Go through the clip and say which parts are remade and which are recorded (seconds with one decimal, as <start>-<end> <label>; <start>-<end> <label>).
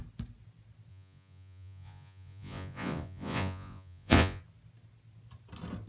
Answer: 0.0-0.9 recorded; 0.9-4.4 remade; 4.4-5.9 recorded